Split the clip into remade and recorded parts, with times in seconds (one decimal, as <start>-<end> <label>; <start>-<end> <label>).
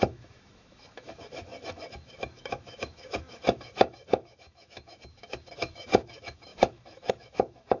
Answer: 0.0-7.8 remade